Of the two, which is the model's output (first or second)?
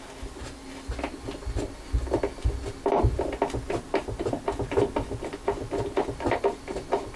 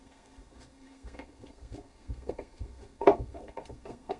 second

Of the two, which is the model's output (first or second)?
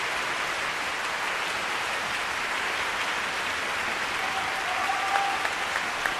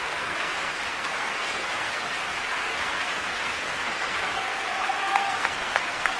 second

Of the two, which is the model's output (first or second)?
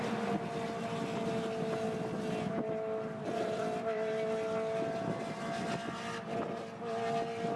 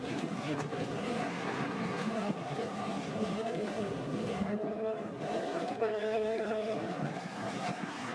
second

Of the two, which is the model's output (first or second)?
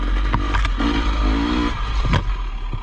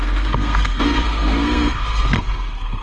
second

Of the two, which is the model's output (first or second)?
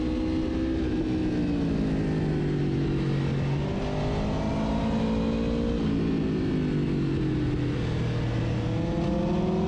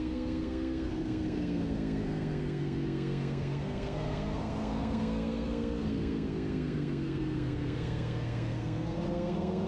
second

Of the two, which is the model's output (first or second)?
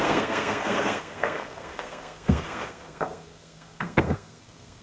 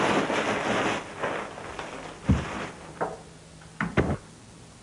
first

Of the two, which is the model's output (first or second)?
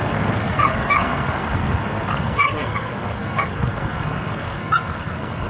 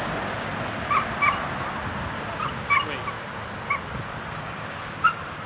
first